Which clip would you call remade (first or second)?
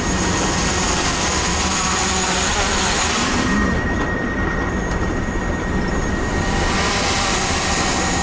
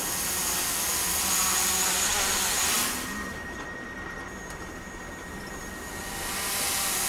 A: first